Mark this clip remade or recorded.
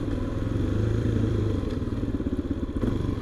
remade